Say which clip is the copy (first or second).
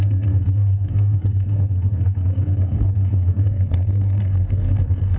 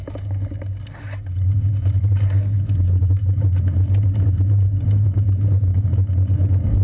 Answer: first